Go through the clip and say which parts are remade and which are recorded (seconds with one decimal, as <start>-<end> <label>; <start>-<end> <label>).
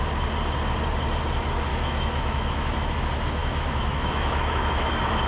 0.0-1.7 recorded; 1.7-3.0 remade; 3.0-3.4 recorded; 3.4-5.3 remade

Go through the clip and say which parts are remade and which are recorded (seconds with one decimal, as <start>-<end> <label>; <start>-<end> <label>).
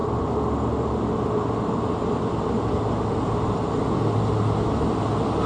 0.0-5.5 recorded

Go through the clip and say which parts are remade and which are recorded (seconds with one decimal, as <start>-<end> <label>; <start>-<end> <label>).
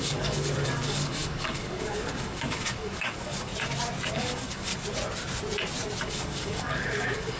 0.0-3.5 remade; 3.5-4.1 recorded; 4.1-4.7 remade; 4.7-6.0 recorded; 6.0-7.4 remade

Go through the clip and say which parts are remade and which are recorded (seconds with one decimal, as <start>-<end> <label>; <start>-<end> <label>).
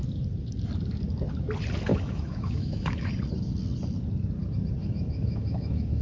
0.0-1.9 recorded; 1.9-3.1 remade; 3.1-4.8 recorded; 4.8-6.0 remade